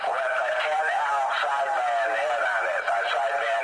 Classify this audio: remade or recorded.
remade